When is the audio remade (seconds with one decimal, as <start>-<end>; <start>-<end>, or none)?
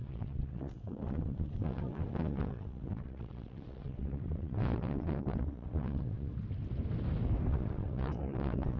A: 0.0-6.3; 7.5-8.8